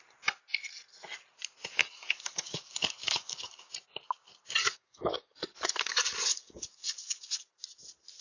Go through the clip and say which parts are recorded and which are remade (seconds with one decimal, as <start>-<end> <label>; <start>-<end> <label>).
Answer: 0.0-1.8 recorded; 1.8-3.7 remade; 3.7-4.6 recorded; 4.6-7.4 remade; 7.4-8.2 recorded